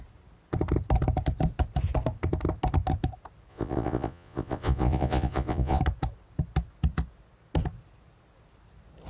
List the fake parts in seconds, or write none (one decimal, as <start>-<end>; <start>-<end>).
3.5-5.8